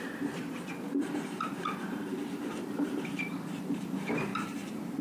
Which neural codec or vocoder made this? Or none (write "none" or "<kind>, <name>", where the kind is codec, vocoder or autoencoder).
vocoder, BigVGAN v2